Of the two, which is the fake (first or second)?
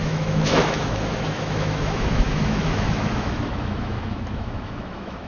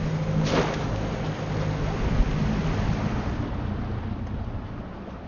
first